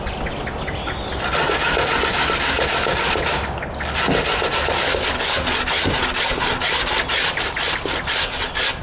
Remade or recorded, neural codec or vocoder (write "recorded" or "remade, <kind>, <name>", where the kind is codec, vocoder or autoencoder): recorded